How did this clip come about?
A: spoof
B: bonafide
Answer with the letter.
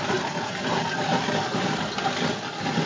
B